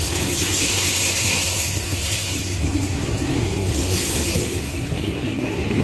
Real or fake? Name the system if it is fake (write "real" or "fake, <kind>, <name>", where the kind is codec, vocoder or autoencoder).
fake, codec, SNAC